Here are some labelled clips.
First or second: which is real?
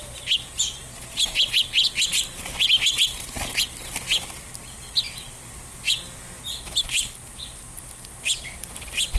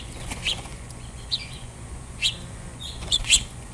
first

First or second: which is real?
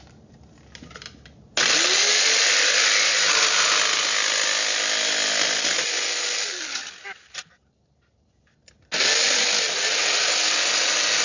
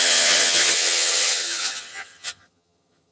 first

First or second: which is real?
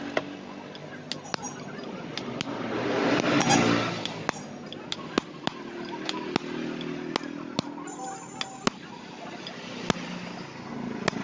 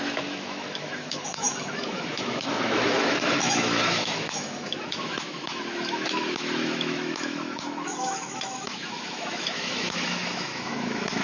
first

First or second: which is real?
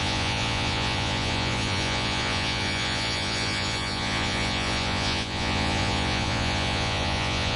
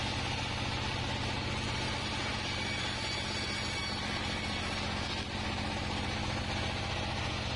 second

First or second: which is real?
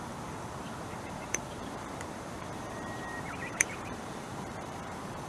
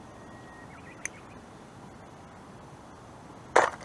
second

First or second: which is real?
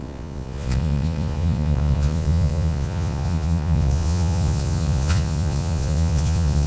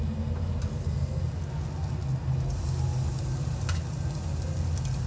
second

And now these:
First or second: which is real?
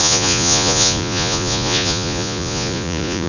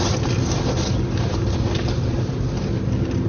second